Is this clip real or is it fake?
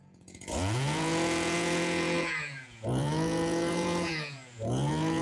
fake